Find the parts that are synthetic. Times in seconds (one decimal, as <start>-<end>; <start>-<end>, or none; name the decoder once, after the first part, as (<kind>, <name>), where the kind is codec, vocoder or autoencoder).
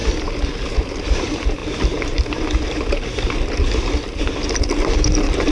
0.0-1.6 (vocoder, BigVGAN v2); 4.2-5.5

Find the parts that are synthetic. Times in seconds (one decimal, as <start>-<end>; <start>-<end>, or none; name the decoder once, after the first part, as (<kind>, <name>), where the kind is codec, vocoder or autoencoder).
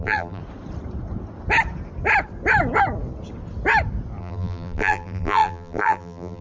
0.0-0.4 (vocoder, BigVGAN v2); 4.2-6.4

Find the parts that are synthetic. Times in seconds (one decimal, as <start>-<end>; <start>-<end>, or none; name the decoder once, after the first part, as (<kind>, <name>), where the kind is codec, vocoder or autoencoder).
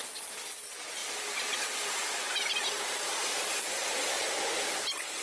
1.0-4.1 (vocoder, BigVGAN v2)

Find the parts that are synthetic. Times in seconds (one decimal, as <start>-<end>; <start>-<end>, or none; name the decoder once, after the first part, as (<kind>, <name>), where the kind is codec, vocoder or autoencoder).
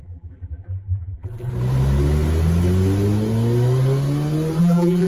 0.0-1.5 (vocoder, BigVGAN v2); 4.6-5.1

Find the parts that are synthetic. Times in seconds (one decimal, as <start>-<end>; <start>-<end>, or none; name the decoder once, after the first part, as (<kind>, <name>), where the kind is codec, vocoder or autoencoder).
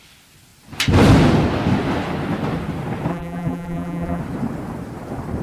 3.1-4.2 (vocoder, BigVGAN v2)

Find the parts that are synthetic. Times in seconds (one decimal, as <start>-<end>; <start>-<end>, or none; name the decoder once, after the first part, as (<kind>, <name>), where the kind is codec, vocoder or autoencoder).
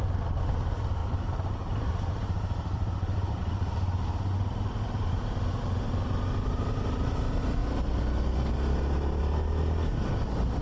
1.0-3.4 (vocoder, BigVGAN v2)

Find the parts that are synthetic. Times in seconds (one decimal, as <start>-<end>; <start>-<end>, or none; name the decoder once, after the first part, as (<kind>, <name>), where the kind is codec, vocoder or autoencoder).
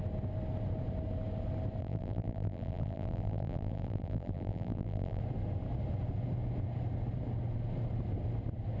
1.8-5.2 (vocoder, BigVGAN v2)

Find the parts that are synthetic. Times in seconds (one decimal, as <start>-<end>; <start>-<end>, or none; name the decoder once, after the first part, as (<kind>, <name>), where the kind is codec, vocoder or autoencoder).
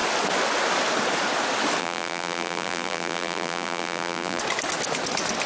1.8-4.4 (vocoder, BigVGAN v2)